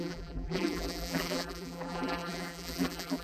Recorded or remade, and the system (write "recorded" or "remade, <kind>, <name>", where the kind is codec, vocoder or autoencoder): remade, vocoder, BigVGAN v2